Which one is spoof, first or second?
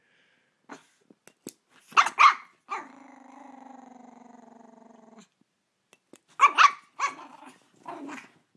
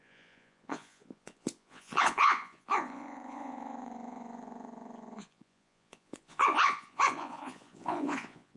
second